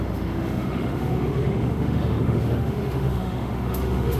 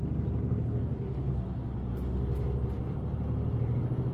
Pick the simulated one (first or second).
first